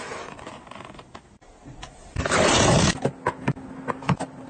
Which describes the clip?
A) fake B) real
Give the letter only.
B